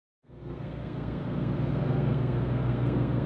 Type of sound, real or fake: fake